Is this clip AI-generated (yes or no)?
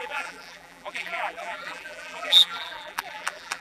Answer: yes